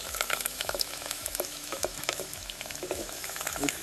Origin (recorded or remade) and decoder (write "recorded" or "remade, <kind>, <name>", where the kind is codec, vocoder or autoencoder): remade, autoencoder, DAC-VAE